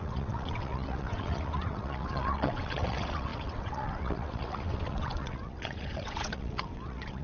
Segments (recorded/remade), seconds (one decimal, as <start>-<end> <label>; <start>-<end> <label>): 0.0-7.2 remade